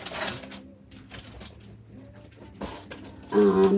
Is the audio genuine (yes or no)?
yes